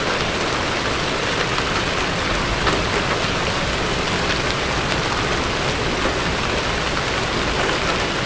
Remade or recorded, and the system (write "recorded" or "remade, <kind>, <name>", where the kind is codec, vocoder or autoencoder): recorded